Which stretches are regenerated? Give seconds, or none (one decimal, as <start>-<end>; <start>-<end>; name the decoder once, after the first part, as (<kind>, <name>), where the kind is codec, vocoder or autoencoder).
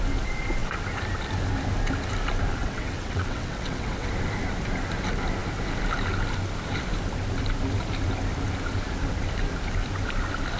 2.6-4.1 (vocoder, WaveNeXt)